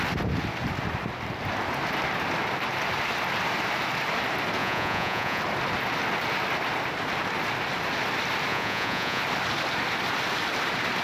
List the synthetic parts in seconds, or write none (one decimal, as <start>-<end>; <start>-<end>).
4.6-5.4; 8.5-9.2